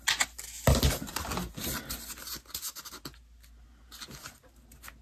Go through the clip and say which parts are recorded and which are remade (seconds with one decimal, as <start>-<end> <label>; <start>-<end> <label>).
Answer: 0.0-5.0 recorded